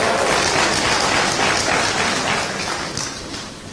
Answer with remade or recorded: recorded